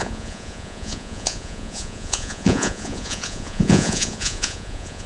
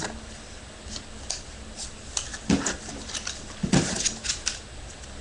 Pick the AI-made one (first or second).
first